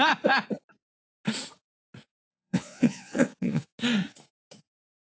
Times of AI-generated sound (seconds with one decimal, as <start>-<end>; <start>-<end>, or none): 2.3-3.6